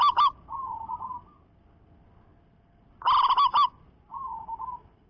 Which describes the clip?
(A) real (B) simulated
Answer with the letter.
A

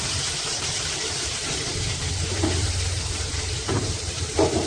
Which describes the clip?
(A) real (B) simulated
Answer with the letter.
B